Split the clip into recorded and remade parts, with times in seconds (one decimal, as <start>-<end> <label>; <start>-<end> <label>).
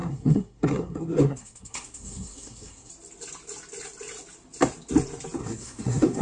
0.0-2.9 remade; 2.9-5.4 recorded; 5.4-6.2 remade